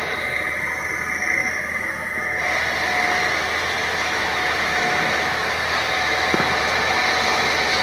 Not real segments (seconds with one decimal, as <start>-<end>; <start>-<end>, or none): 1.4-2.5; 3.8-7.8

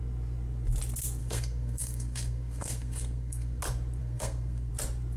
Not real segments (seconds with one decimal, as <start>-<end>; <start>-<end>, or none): 1.2-3.6; 4.0-4.7

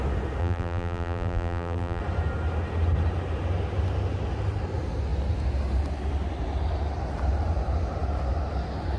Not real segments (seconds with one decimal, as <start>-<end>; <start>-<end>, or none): 0.4-2.0

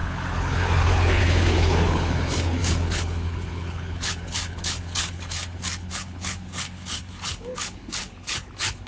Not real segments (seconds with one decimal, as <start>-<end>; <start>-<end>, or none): 0.0-8.9

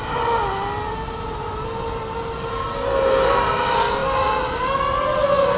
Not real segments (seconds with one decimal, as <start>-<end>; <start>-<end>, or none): 2.5-3.4

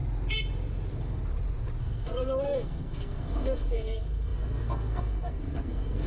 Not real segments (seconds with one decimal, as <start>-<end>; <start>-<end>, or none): 1.8-6.1

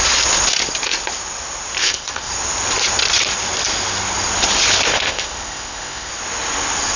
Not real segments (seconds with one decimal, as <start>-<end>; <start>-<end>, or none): 1.8-2.3; 4.9-6.1

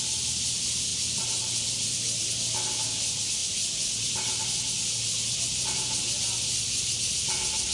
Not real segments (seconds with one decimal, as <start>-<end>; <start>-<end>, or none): 0.9-2.3